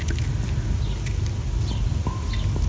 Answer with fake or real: real